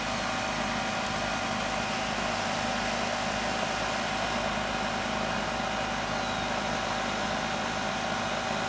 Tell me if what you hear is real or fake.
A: real